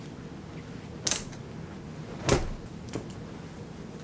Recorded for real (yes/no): yes